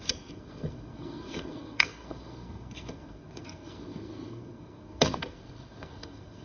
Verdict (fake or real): fake